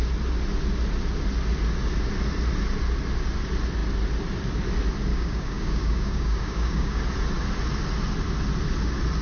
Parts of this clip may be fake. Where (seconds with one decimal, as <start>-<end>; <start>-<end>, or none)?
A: 5.1-7.0